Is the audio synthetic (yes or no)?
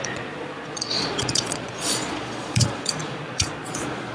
yes